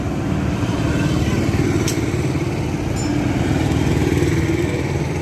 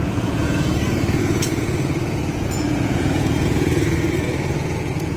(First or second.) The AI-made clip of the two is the second